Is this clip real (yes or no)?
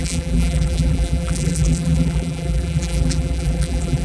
no